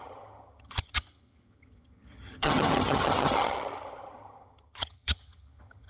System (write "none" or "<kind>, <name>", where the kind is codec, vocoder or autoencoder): vocoder, HiFi-GAN